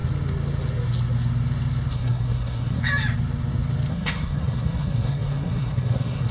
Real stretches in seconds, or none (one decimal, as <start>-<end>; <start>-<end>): 0.0-1.9; 2.8-3.9